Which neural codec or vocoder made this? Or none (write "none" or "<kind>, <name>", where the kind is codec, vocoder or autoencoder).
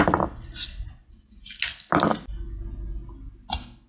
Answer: none